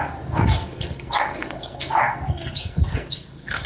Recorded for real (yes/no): no